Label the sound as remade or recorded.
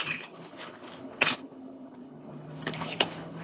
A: remade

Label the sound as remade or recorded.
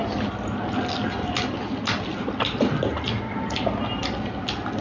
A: recorded